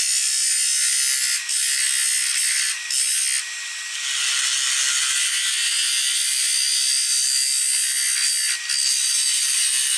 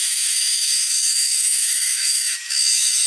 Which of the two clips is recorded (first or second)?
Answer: first